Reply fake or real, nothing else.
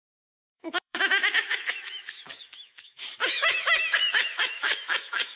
fake